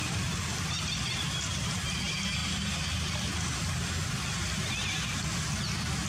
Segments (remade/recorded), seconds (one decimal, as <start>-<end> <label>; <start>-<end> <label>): 0.0-1.5 remade; 1.5-2.4 recorded; 2.4-3.1 remade; 3.1-6.1 recorded